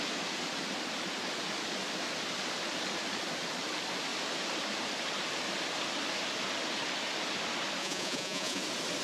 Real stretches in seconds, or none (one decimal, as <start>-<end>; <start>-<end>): 0.0-7.8; 8.6-9.0